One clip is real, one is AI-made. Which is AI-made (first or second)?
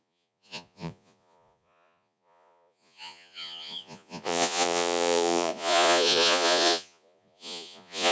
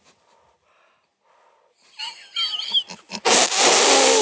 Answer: first